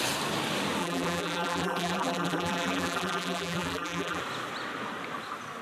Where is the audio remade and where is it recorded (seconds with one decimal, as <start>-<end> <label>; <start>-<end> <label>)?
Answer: 0.0-0.8 recorded; 0.8-4.2 remade; 4.2-5.6 recorded